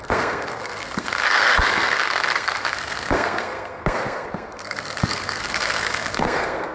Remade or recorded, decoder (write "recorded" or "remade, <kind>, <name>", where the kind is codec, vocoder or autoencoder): remade, codec, SNAC